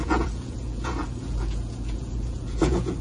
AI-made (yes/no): yes